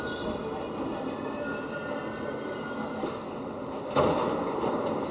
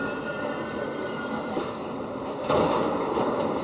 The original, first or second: first